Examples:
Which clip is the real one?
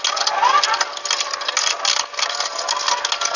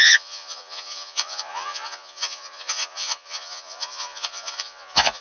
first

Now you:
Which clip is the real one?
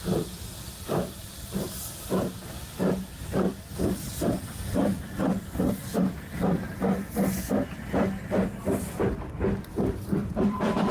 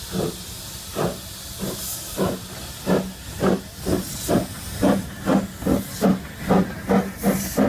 second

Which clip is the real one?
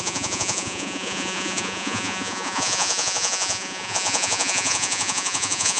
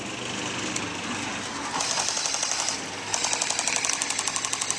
second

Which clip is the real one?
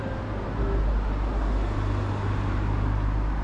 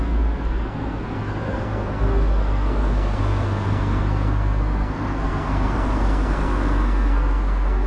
first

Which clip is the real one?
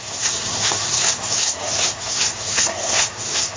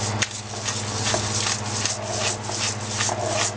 second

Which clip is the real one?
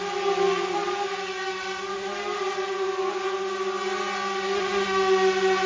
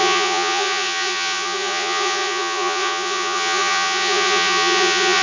first